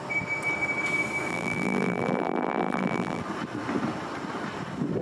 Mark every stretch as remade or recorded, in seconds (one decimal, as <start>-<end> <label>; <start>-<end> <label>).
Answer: 0.0-1.3 recorded; 1.3-3.2 remade; 3.2-5.0 recorded